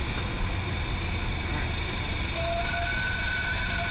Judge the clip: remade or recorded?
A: recorded